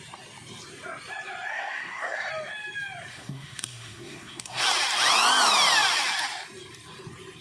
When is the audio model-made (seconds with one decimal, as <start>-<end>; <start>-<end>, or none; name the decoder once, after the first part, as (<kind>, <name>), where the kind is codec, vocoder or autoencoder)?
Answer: 1.5-2.3 (codec, SNAC); 3.1-4.6